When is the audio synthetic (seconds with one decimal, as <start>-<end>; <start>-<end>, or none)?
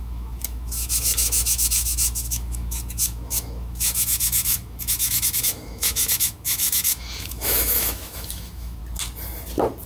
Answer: 0.0-8.8